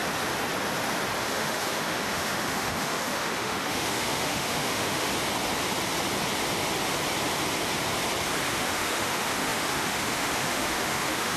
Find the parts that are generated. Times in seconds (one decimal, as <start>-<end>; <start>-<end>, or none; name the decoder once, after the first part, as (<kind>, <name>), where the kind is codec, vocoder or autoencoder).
1.2-5.1 (autoencoder, DAC-VAE); 8.5-11.4